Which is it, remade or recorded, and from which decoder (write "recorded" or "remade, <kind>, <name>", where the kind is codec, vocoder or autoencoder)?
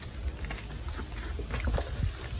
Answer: recorded